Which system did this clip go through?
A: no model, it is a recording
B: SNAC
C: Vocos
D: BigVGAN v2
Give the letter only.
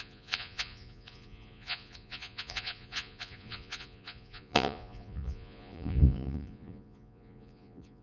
C